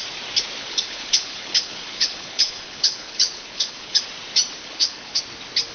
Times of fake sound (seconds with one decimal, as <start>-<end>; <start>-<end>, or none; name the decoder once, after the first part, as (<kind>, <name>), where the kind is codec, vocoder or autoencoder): 0.6-4.0 (codec, HILCodec); 4.6-5.2